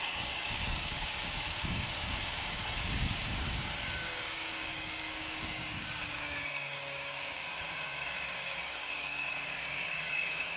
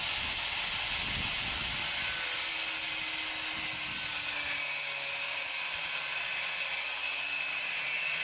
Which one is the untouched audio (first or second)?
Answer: second